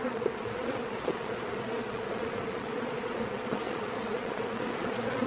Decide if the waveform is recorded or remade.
remade